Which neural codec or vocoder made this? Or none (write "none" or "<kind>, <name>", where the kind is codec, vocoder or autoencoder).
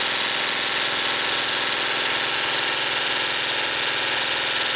none